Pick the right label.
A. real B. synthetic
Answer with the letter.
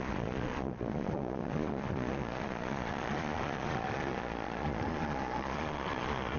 B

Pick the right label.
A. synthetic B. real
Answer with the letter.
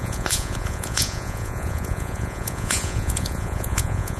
A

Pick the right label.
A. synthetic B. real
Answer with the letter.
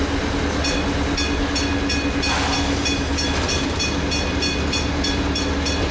B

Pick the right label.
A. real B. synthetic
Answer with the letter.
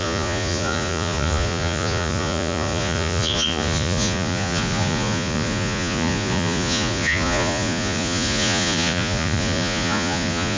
B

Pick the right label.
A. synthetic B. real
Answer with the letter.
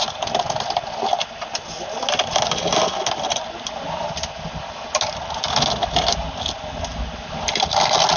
B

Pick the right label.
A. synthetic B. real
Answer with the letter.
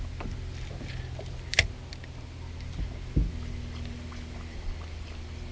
B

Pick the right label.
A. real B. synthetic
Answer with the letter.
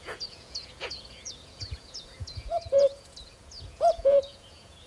B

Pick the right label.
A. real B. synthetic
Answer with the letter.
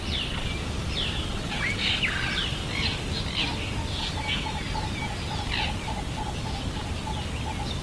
A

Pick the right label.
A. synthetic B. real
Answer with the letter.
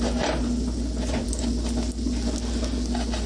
B